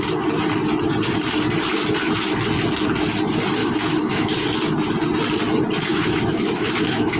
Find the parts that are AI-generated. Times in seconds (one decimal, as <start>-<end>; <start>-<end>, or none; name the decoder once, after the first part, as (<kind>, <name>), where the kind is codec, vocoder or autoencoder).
3.6-4.4 (autoencoder, DAC-VAE); 5.9-7.2